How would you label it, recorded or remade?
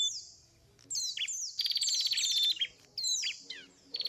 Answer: recorded